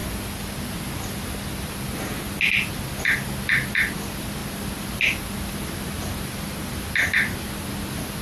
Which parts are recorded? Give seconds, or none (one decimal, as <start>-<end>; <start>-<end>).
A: 0.0-8.2